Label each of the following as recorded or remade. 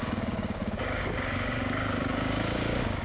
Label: remade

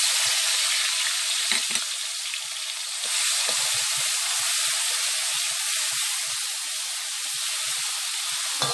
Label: recorded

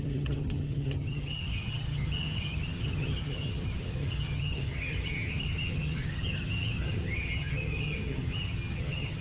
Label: remade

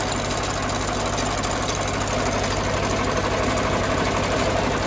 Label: recorded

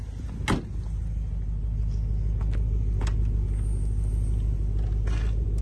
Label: recorded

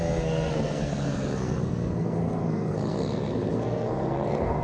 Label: remade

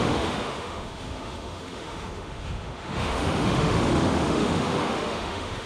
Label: remade